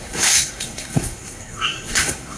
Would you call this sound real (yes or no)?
no